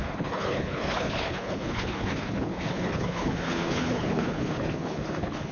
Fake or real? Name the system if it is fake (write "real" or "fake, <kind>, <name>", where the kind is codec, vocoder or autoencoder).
fake, codec, HILCodec